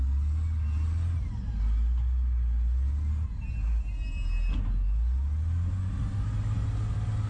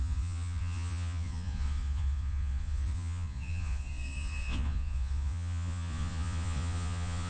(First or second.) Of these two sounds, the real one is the first